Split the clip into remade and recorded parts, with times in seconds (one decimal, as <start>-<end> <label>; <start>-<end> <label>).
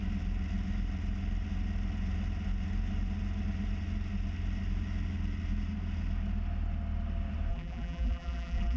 0.0-7.5 recorded; 7.5-8.8 remade